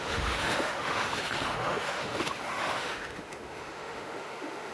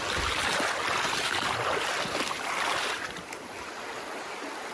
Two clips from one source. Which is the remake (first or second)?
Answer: first